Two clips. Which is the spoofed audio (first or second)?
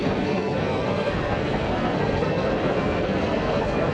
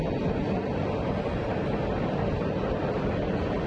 first